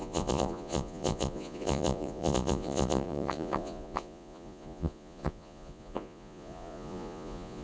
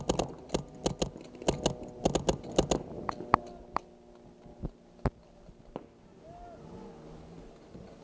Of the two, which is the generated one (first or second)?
first